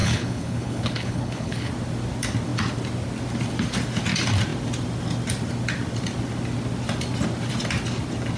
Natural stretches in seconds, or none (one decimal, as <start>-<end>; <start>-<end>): 1.7-8.4